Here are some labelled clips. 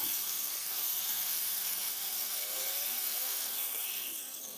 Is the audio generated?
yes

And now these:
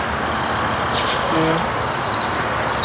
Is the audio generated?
no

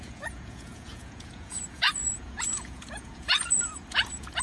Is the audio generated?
yes